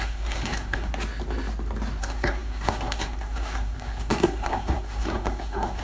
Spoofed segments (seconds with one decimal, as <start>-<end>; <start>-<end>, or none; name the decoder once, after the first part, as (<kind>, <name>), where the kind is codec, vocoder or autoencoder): 0.0-0.9 (codec, SNAC); 2.0-5.8